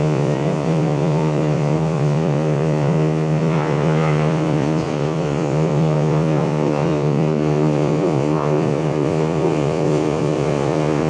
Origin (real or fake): fake